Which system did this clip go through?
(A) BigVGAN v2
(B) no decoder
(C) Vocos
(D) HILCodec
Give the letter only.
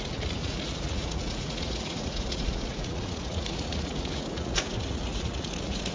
C